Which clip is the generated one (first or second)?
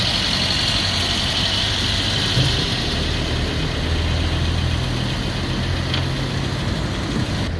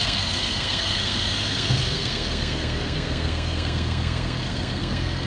second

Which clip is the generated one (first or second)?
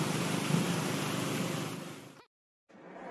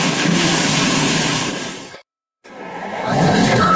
second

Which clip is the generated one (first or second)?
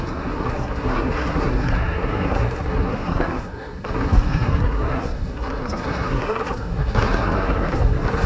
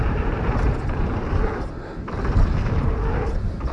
first